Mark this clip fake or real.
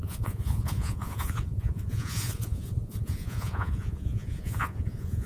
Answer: fake